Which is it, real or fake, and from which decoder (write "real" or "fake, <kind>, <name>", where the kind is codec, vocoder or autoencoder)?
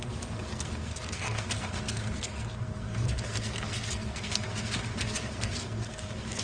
fake, codec, SNAC